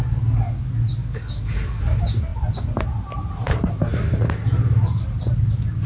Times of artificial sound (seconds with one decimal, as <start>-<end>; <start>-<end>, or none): 1.0-1.8